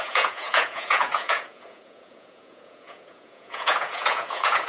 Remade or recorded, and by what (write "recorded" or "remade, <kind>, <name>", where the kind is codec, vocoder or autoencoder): remade, vocoder, Vocos